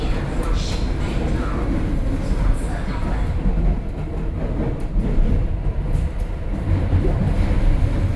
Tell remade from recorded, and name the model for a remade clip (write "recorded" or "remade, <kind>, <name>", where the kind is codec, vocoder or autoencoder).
recorded